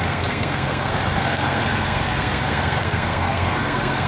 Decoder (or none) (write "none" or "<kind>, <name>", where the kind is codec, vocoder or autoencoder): codec, SNAC